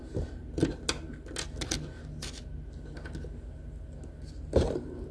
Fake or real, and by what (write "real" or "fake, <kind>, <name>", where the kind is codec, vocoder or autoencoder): real